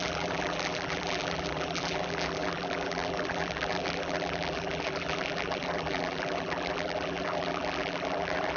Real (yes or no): no